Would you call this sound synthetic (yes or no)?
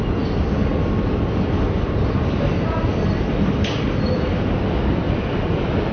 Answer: no